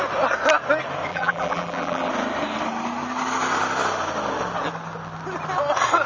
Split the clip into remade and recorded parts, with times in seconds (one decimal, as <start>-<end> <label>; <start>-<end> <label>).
0.0-1.1 recorded; 1.1-2.1 remade; 2.1-6.1 recorded